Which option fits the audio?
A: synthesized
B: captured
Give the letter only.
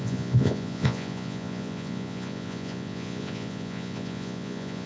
A